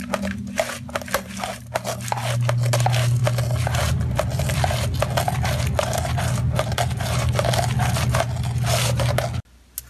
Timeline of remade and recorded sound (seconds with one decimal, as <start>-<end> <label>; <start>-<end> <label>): 0.0-9.9 recorded